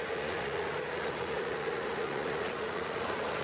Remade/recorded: remade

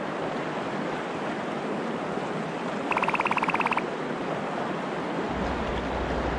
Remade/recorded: recorded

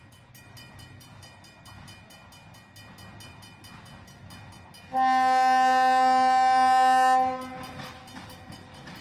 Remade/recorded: recorded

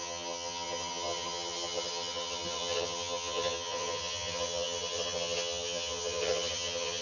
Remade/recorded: remade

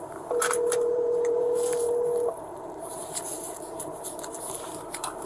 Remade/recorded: remade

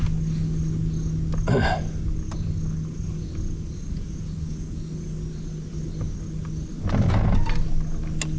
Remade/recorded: recorded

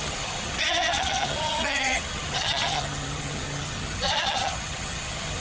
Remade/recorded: remade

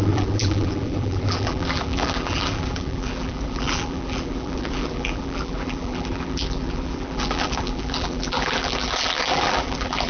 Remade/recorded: remade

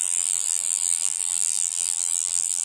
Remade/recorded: remade